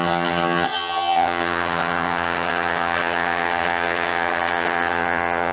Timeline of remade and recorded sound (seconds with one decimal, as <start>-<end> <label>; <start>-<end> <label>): 0.0-5.5 remade